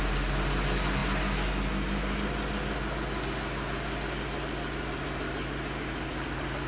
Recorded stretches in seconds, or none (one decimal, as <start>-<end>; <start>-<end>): 0.0-6.7